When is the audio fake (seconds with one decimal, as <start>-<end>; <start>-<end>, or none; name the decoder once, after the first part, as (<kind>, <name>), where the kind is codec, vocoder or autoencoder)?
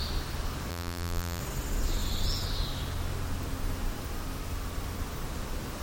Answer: 0.7-1.4 (vocoder, BigVGAN v2)